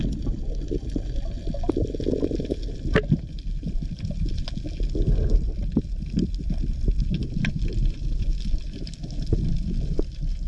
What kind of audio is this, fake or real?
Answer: real